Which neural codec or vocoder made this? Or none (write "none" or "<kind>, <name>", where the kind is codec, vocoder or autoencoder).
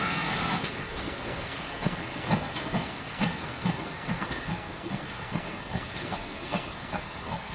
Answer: codec, SNAC